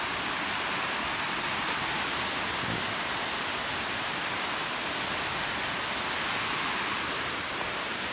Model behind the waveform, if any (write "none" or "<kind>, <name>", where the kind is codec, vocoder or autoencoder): none